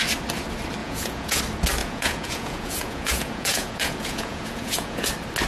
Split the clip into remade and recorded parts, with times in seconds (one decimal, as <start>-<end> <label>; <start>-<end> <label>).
0.0-0.8 recorded; 0.8-1.4 remade; 1.4-1.8 recorded; 1.8-5.1 remade; 5.1-5.5 recorded